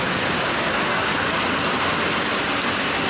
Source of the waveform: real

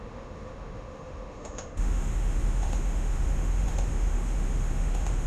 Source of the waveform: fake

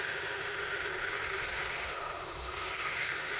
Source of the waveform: fake